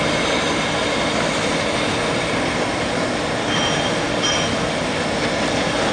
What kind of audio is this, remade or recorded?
recorded